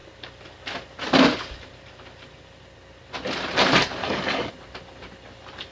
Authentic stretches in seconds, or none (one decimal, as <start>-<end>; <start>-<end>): 0.0-4.0; 4.5-5.7